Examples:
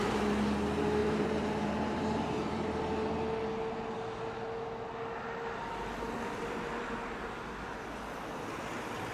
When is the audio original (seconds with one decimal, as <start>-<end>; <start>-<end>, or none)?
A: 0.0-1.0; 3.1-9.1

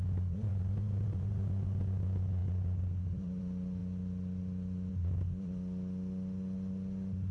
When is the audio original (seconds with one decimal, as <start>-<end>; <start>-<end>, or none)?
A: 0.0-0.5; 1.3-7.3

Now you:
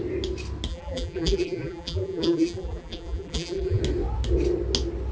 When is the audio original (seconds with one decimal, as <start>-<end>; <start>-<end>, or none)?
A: 0.0-0.7; 3.8-5.1